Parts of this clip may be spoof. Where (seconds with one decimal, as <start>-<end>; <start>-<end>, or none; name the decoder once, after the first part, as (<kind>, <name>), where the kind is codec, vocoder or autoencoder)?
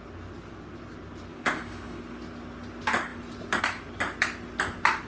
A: 1.3-2.0 (codec, DAC)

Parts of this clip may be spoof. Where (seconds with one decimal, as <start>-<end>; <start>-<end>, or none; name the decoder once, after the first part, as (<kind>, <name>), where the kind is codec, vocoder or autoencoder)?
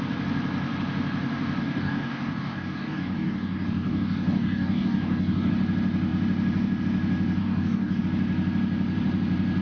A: 1.6-5.5 (codec, DAC); 7.4-8.0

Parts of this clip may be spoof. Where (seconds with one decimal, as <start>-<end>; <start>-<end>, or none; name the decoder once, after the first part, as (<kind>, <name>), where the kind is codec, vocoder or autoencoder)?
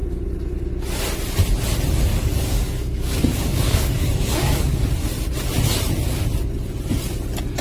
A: 2.1-4.9 (codec, DAC)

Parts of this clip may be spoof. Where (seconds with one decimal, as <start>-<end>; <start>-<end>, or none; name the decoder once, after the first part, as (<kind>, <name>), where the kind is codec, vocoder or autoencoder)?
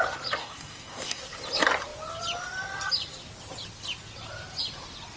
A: 0.4-1.2 (codec, DAC)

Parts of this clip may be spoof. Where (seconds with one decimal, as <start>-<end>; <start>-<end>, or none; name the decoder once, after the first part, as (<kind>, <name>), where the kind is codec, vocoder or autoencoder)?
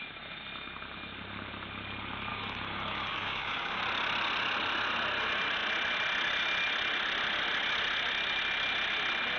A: 2.3-3.8 (codec, DAC)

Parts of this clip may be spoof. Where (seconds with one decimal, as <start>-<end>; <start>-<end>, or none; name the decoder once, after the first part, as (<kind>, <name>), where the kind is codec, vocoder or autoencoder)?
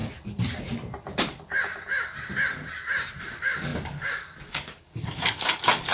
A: 3.2-5.9 (codec, DAC)